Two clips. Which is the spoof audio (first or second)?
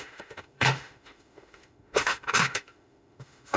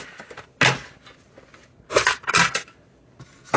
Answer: first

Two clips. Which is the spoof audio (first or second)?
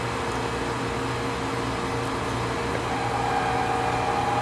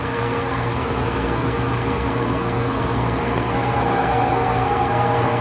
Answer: second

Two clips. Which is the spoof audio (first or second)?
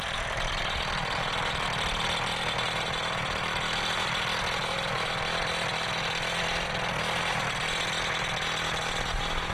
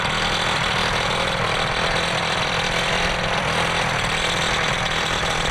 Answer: second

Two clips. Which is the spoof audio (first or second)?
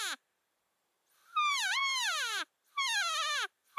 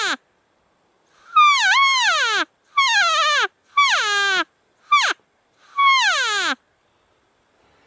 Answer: first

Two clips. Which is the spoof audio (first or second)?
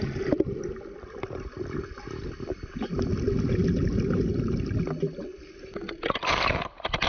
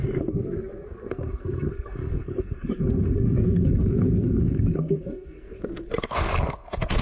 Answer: second